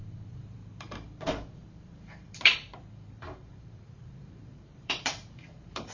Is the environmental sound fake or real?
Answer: fake